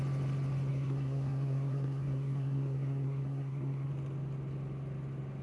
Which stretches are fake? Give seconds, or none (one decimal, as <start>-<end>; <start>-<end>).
0.7-3.9